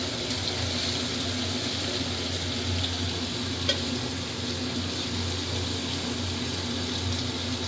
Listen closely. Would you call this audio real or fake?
real